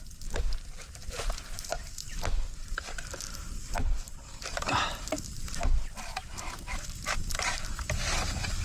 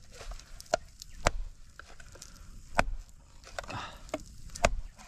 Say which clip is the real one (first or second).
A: second